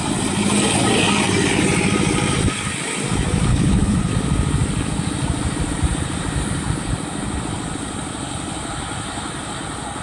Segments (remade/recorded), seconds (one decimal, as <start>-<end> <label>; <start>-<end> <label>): 0.0-3.5 recorded; 3.5-4.1 remade; 4.1-10.0 recorded